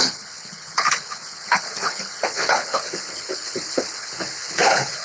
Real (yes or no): no